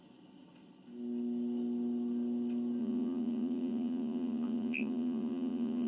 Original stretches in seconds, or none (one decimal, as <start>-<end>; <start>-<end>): 0.0-2.8